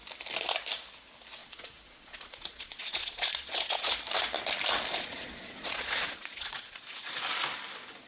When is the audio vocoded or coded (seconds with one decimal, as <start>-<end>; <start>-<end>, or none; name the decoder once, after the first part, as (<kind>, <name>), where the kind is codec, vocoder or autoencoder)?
1.4-3.9 (vocoder, Vocos); 4.9-7.1